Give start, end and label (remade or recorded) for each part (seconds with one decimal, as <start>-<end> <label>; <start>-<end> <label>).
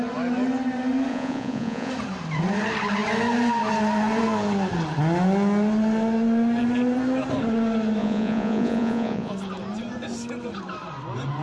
0.0-1.1 recorded; 1.1-1.9 remade; 1.9-8.0 recorded; 8.0-9.3 remade; 9.3-11.4 recorded